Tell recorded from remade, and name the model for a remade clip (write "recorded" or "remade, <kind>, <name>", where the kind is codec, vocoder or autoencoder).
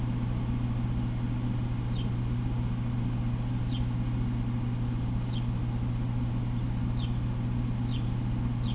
recorded